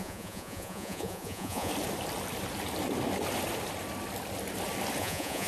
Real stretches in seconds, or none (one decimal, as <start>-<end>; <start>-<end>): 1.7-5.0